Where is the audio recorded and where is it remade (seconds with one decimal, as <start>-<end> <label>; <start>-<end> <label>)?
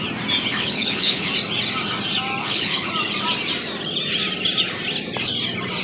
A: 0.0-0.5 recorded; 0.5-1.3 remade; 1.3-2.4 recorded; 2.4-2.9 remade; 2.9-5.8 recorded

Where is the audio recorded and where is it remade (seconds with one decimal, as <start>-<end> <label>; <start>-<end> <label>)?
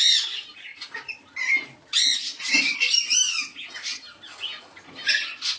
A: 0.0-5.6 recorded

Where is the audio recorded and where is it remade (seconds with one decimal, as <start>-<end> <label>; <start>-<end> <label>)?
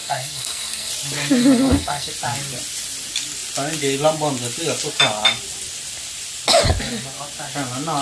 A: 0.0-0.9 remade; 0.9-1.4 recorded; 1.4-2.1 remade; 2.1-8.0 recorded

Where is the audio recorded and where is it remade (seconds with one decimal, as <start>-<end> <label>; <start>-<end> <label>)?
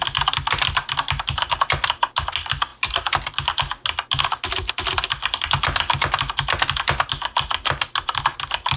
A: 0.0-8.8 recorded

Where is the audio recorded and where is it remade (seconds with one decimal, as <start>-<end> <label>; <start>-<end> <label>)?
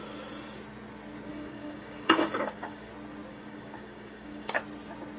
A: 0.0-1.3 recorded; 1.3-2.9 remade; 2.9-3.3 recorded; 3.3-4.6 remade; 4.6-5.2 recorded